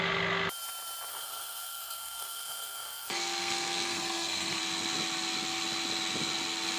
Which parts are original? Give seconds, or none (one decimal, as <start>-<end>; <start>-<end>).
0.0-1.1; 4.6-6.8